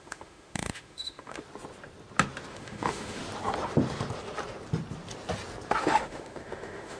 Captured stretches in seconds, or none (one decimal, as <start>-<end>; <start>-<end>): 1.4-2.5; 3.2-5.8